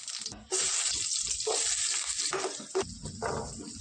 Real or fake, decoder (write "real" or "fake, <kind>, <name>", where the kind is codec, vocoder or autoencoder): real